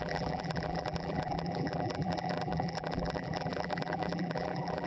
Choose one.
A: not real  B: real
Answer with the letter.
A